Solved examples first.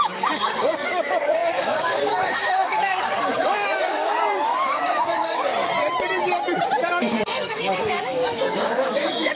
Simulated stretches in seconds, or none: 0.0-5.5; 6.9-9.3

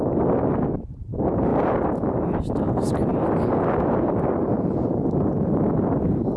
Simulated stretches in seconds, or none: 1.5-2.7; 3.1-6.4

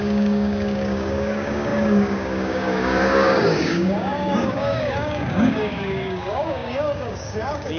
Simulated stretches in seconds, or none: 0.0-7.8

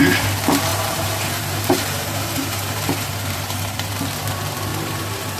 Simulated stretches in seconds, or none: 0.7-3.9; 4.7-5.4

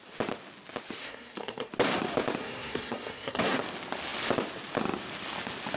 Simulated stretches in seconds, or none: 1.0-1.7; 2.4-3.6

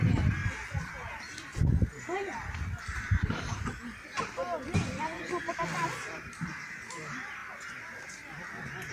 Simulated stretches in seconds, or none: none